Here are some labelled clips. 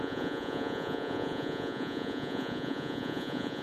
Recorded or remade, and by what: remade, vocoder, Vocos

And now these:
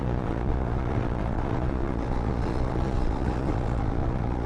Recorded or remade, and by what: remade, vocoder, Vocos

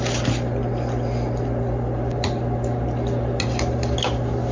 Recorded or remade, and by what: recorded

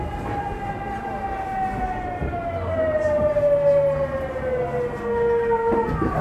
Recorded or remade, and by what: recorded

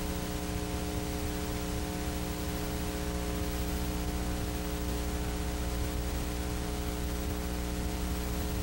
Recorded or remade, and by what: recorded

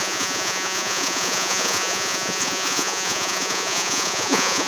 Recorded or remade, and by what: remade, vocoder, Vocos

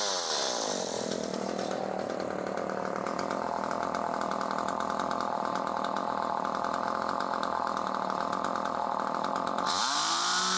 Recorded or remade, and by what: recorded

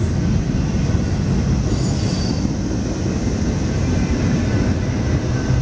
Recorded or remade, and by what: recorded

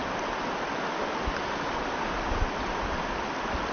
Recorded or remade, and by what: recorded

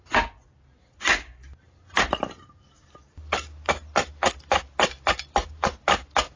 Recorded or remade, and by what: recorded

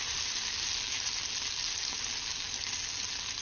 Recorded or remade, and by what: recorded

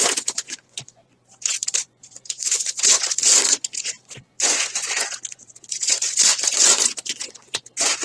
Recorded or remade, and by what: remade, vocoder, Vocos